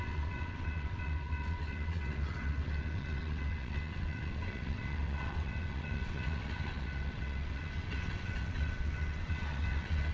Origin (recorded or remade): remade